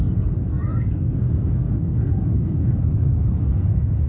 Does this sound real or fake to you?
fake